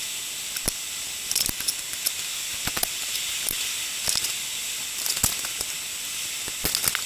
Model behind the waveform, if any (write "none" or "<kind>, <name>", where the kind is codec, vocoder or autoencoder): none